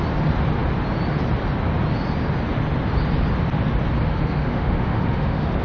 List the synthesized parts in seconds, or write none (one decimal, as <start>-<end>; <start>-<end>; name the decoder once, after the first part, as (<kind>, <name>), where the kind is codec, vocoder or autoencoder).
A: 4.1-5.6 (autoencoder, DAC-VAE)